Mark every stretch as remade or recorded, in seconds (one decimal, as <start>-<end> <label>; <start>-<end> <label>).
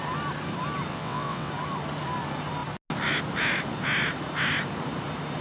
0.0-0.9 recorded; 0.9-1.5 remade; 1.5-5.4 recorded